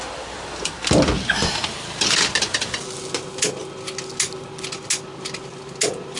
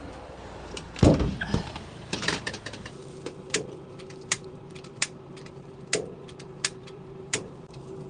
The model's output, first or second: second